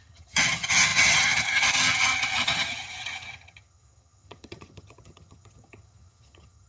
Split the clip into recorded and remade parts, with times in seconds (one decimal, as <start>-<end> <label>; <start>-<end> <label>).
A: 0.0-6.7 remade